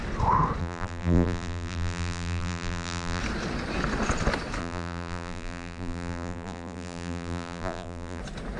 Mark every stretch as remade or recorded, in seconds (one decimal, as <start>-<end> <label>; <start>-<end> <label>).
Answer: 0.0-0.6 recorded; 0.6-3.2 remade; 3.2-4.6 recorded; 4.6-8.2 remade; 8.2-8.6 recorded